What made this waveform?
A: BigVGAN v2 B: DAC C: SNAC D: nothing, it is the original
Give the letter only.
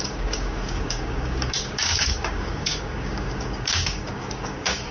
B